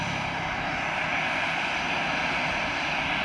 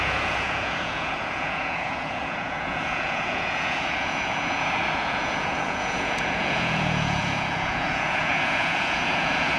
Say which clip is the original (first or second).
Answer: first